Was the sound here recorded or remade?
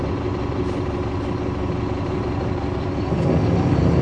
recorded